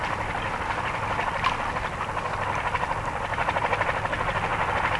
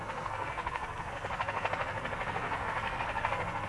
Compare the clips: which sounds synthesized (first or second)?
second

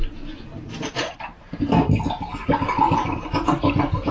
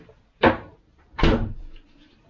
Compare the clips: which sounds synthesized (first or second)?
second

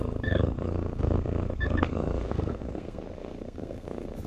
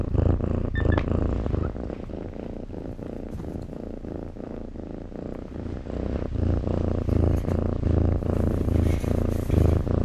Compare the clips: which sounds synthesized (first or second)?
first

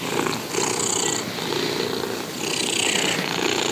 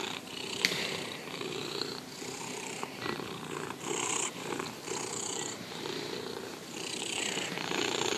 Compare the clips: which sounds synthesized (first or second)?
second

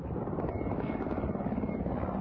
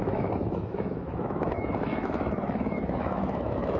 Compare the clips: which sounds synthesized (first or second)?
second